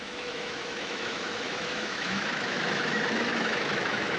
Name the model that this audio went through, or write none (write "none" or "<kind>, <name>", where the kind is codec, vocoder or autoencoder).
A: autoencoder, DAC-VAE